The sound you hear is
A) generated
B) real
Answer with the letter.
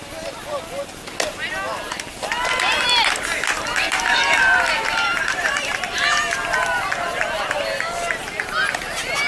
B